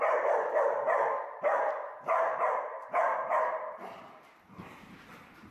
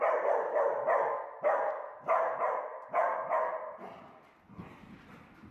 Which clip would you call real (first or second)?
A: second